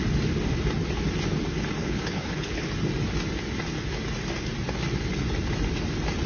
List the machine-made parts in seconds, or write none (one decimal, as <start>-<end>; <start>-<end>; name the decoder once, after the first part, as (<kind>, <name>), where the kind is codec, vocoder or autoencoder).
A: 1.8-2.7 (codec, HILCodec)